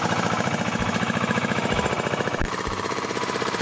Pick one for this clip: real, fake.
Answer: fake